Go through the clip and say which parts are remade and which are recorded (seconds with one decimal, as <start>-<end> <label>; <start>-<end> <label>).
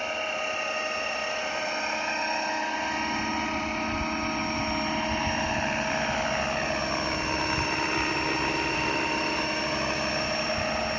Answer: 0.0-11.0 recorded